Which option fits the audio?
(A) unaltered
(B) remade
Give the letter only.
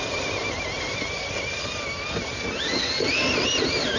A